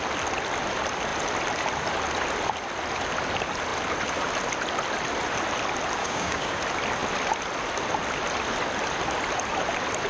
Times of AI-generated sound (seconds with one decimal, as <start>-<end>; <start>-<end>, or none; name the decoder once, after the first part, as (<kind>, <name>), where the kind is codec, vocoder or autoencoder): 6.0-6.6 (codec, DAC)